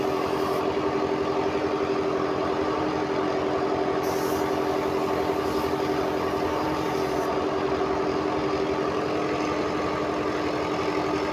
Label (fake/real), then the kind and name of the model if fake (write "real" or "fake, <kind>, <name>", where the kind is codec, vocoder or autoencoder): real